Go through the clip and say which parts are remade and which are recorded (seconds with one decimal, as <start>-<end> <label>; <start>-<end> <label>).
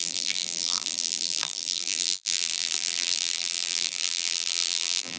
0.0-5.2 remade